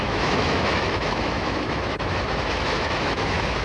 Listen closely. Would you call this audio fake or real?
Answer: fake